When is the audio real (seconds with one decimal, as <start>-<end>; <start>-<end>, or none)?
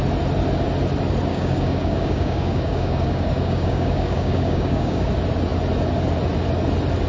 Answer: 0.0-1.3; 5.1-7.1